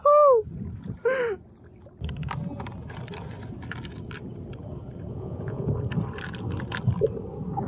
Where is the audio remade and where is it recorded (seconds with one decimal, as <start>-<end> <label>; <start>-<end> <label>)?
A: 0.0-5.1 recorded; 5.1-5.7 remade; 5.7-7.7 recorded